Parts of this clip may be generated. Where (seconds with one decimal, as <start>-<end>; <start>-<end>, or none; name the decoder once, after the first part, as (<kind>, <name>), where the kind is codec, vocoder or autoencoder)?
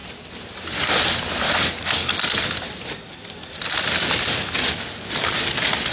none